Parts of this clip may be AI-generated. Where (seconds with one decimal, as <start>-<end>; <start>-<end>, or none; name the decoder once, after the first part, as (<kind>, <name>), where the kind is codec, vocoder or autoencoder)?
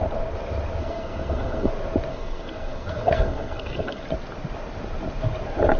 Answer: 0.8-1.7 (codec, SNAC); 2.1-4.0